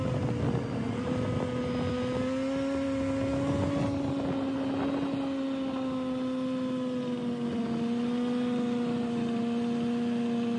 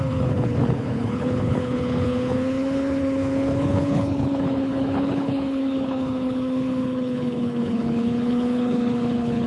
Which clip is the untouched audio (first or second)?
first